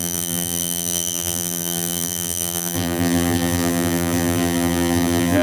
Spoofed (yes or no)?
yes